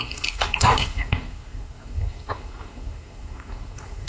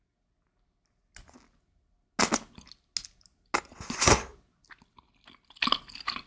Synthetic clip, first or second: first